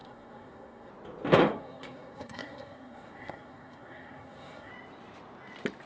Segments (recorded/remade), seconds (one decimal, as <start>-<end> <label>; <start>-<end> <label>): 0.0-0.9 remade; 0.9-1.4 recorded; 1.4-4.7 remade; 4.7-5.9 recorded